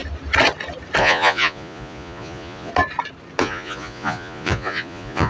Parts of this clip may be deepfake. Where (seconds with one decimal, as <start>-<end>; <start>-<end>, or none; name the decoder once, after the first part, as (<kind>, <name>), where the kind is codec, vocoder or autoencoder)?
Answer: 1.0-2.7 (vocoder, Vocos); 3.4-5.3

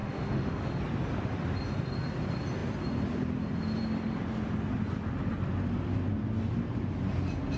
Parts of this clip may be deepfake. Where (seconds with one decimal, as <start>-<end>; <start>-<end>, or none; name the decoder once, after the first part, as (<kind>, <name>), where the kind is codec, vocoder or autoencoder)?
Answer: 0.0-0.8 (autoencoder, DAC-VAE)

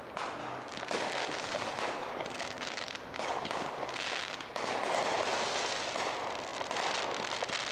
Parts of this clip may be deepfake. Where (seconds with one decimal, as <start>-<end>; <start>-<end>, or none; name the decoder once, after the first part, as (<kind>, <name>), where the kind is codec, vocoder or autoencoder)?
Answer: 0.4-5.0 (codec, DAC)

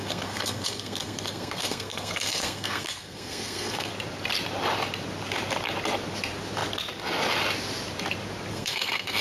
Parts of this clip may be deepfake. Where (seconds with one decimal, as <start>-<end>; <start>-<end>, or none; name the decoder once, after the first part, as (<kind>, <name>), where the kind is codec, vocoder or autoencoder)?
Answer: 0.0-3.9 (codec, SNAC); 8.5-9.2

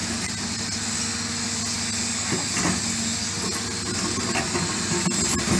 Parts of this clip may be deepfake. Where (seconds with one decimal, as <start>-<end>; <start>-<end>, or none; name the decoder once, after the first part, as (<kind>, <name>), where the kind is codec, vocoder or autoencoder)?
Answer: none

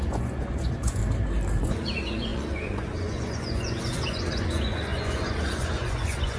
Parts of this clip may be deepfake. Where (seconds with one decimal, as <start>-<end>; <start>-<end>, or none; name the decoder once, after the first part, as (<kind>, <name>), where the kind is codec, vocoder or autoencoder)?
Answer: 0.0-1.0 (vocoder, Vocos); 1.6-6.4

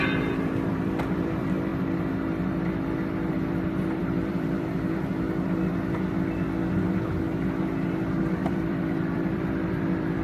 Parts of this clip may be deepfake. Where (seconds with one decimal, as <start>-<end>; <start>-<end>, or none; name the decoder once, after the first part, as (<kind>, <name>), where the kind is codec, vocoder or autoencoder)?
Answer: 0.0-1.7 (vocoder, BigVGAN v2); 3.3-5.1; 8.2-10.2